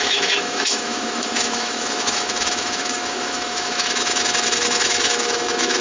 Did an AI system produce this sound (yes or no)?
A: yes